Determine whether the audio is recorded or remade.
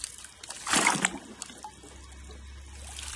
recorded